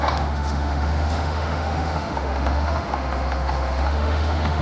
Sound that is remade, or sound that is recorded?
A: remade